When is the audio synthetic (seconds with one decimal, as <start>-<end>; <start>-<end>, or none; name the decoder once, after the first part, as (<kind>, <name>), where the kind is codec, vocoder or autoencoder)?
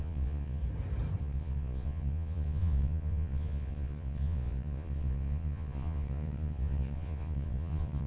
0.0-0.6 (vocoder, Vocos); 1.2-8.1